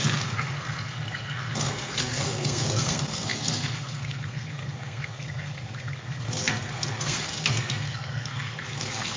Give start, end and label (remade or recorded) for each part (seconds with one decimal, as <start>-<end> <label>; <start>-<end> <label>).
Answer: 0.0-9.2 remade